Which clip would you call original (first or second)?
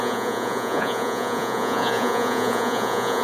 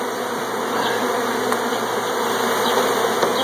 second